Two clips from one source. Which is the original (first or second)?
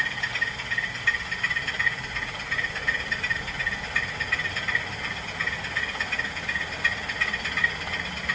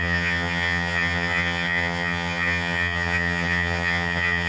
first